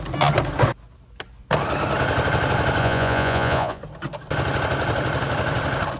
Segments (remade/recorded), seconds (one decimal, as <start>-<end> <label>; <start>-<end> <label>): 0.0-2.8 recorded; 2.8-3.8 remade; 3.8-6.0 recorded